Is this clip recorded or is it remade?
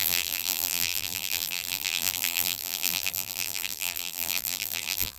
remade